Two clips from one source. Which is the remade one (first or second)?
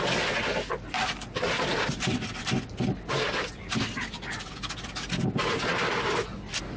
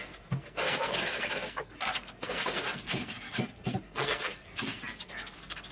second